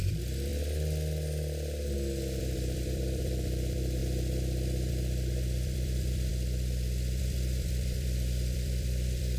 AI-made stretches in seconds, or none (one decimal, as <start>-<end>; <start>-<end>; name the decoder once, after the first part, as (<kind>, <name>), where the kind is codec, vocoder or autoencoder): 0.0-0.5 (vocoder, BigVGAN v2); 2.4-4.0; 4.9-6.3; 7.2-9.4